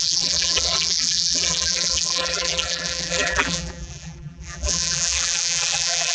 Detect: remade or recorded remade